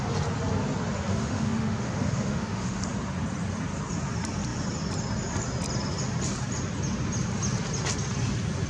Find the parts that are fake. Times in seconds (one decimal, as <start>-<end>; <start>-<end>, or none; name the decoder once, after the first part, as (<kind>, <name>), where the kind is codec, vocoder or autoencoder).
1.1-2.8 (autoencoder, DAC-VAE)